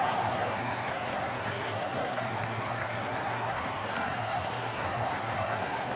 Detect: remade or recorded remade